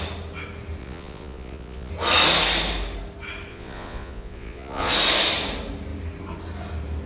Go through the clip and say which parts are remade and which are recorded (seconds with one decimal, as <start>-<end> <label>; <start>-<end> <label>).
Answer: 0.0-0.8 recorded; 0.8-1.9 remade; 1.9-3.5 recorded; 3.5-4.9 remade; 4.9-7.1 recorded